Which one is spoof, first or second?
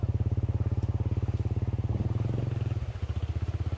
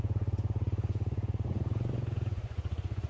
second